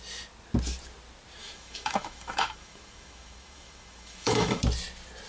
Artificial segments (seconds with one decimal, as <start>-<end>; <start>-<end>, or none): 1.4-4.6

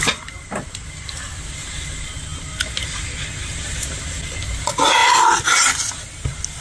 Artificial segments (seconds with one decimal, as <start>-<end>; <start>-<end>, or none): none